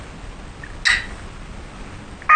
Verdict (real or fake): real